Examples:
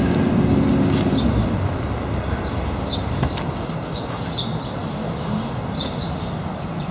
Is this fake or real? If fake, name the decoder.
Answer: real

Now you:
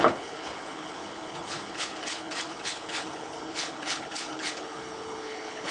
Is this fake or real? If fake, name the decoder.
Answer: fake, codec, HILCodec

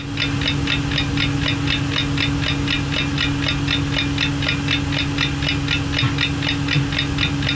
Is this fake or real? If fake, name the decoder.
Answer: real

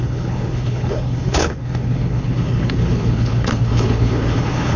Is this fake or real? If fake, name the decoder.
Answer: fake, codec, HILCodec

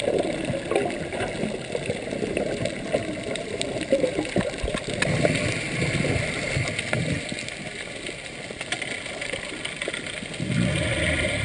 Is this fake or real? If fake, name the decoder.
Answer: real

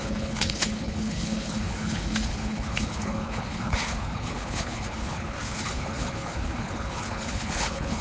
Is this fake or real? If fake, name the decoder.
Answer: fake, codec, HILCodec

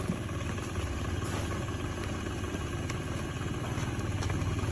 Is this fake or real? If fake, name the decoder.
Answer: real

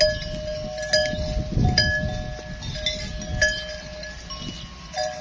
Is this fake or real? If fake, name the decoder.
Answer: real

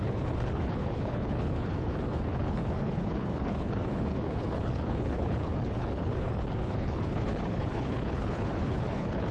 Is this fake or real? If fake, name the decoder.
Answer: fake, codec, HILCodec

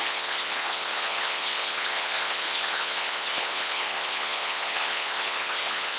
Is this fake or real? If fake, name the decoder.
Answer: fake, codec, HILCodec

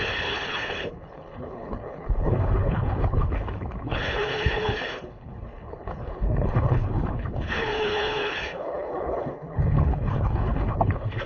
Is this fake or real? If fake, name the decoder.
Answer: fake, codec, HILCodec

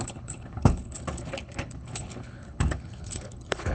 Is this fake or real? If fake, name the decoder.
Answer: fake, codec, HILCodec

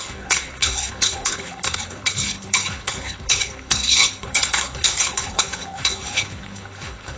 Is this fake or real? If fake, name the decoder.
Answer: fake, codec, HILCodec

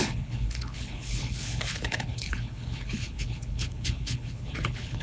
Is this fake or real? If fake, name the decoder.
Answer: fake, codec, HILCodec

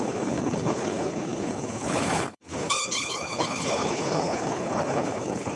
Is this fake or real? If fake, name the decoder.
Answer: fake, codec, HILCodec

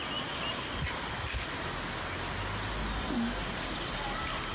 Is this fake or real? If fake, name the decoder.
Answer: real